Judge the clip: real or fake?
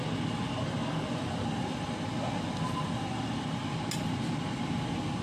real